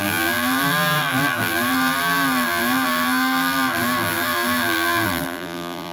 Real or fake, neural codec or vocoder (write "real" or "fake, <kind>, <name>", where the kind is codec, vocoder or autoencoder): fake, vocoder, BigVGAN v2